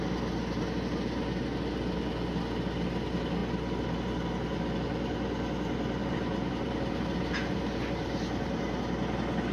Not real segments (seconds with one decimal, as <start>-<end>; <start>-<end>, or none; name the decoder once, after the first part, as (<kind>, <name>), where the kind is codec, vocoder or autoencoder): 6.0-8.6 (vocoder, BigVGAN v2)